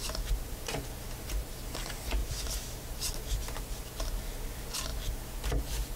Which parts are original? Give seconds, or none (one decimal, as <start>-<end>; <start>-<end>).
0.0-2.2; 3.8-6.0